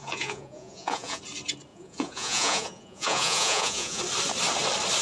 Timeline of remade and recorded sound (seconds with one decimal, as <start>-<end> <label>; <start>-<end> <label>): 0.0-1.2 remade; 1.2-1.7 recorded; 1.7-4.0 remade; 4.0-5.0 recorded